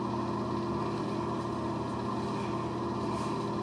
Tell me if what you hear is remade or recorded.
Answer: recorded